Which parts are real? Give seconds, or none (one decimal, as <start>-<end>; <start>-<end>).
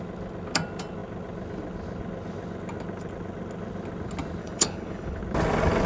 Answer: 0.0-4.4; 5.2-5.9